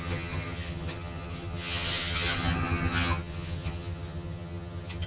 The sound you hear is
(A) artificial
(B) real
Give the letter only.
A